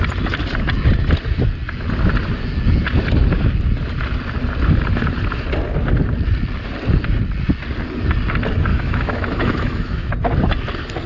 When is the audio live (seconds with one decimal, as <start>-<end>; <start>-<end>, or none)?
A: 0.0-8.7; 10.1-11.1